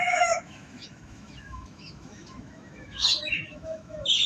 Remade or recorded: remade